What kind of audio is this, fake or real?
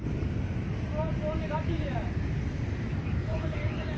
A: fake